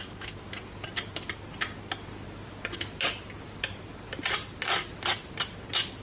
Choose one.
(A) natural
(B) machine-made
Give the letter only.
A